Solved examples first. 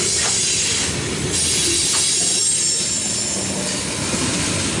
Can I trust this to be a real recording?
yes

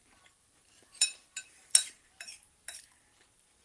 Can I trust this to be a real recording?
no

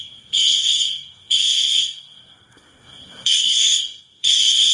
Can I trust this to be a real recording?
no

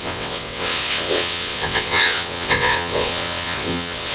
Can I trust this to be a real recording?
no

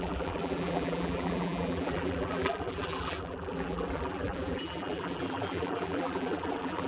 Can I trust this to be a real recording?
no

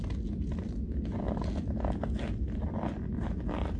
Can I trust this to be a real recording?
yes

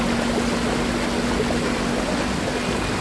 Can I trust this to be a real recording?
yes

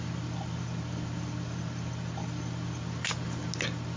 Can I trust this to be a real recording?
yes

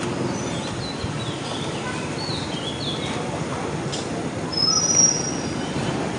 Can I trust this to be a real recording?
yes